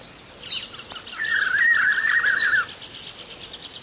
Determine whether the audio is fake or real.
real